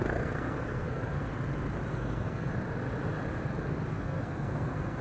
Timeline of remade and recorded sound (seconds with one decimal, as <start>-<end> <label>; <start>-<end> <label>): 0.0-1.3 remade; 1.3-1.9 recorded; 1.9-2.5 remade; 2.5-3.9 recorded; 3.9-5.0 remade